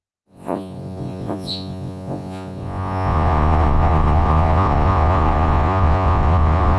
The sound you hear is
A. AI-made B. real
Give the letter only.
A